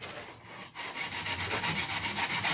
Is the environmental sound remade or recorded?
recorded